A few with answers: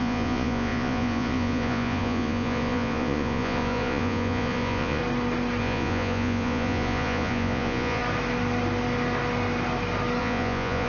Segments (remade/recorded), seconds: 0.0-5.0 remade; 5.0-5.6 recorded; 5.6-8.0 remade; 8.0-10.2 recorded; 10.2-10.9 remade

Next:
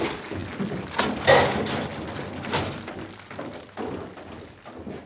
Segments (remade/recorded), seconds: 0.0-5.1 recorded

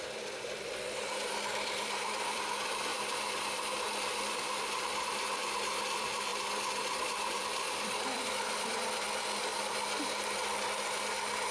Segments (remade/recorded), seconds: 0.0-2.9 remade; 2.9-4.3 recorded; 4.3-6.3 remade; 6.3-7.0 recorded; 7.0-9.5 remade; 9.5-11.0 recorded; 11.0-11.5 remade